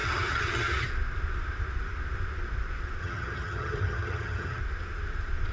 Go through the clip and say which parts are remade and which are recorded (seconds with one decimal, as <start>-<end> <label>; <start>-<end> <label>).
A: 0.0-0.9 remade; 0.9-3.0 recorded; 3.0-4.6 remade; 4.6-5.5 recorded